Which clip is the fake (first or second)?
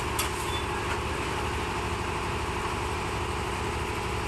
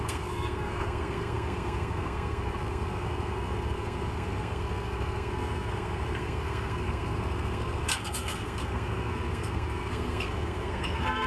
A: second